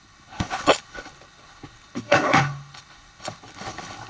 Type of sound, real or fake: fake